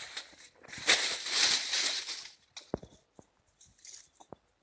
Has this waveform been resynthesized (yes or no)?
no